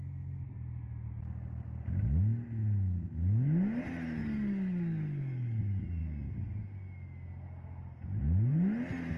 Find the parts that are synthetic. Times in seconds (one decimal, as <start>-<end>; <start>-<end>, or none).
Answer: 4.2-5.6